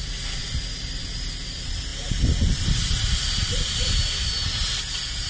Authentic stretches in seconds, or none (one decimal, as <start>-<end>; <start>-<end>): 0.0-5.3